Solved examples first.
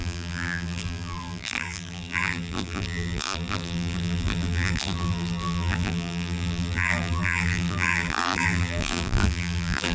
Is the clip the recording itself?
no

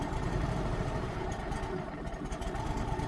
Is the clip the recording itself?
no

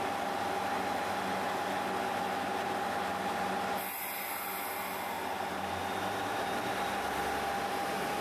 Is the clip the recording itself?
yes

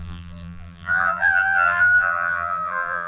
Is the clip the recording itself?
no